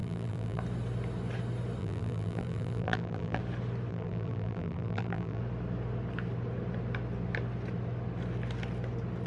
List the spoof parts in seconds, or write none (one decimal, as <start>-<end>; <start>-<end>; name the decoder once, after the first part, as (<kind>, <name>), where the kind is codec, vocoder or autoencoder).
0.0-0.6 (vocoder, BigVGAN v2); 1.8-3.4; 3.9-5.4